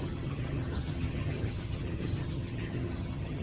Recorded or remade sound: remade